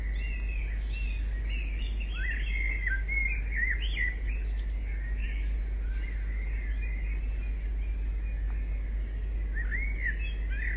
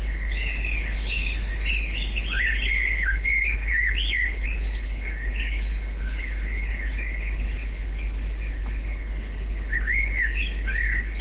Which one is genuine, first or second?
first